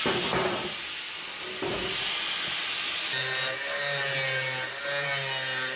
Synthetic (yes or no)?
no